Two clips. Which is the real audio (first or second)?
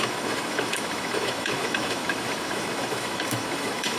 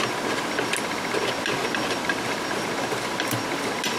second